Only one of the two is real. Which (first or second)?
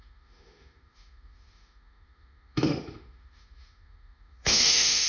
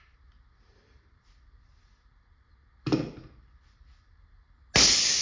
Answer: second